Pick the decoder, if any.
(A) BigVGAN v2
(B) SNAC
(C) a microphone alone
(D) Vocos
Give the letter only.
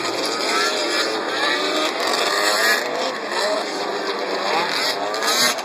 A